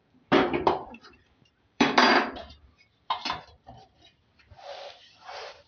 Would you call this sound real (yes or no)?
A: no